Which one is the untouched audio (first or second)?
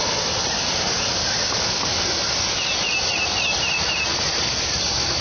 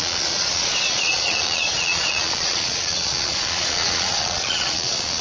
first